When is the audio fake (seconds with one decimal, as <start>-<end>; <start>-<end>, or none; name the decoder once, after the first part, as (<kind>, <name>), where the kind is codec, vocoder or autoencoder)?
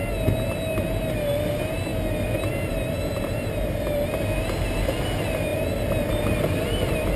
none